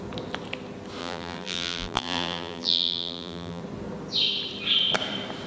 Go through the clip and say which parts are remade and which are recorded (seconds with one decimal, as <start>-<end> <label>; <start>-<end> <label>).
0.0-1.0 recorded; 1.0-3.6 remade; 3.6-5.5 recorded